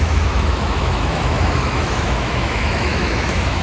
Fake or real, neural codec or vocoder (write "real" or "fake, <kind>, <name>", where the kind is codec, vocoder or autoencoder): fake, autoencoder, DAC-VAE